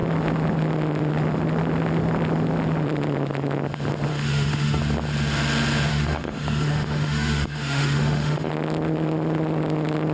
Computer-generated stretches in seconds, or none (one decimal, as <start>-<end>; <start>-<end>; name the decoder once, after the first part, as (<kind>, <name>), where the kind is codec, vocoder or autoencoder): 4.1-4.8 (autoencoder, DAC-VAE); 5.9-8.5